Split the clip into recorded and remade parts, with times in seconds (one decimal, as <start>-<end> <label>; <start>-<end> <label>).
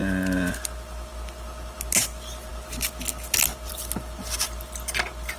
0.0-5.4 recorded